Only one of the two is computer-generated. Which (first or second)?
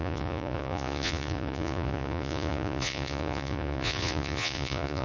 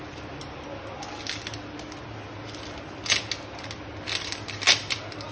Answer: first